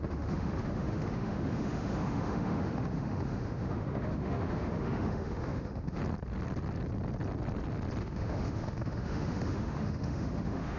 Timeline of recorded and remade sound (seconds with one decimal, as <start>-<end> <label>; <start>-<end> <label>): 0.0-6.0 remade; 6.0-8.0 recorded; 8.0-10.8 remade